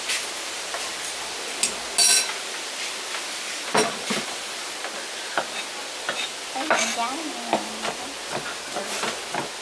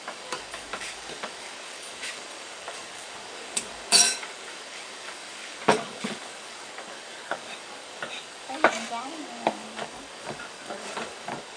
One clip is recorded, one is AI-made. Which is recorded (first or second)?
first